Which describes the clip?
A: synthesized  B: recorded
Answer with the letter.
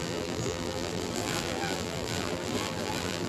A